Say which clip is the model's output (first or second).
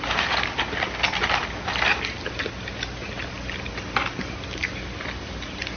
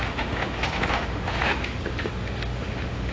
second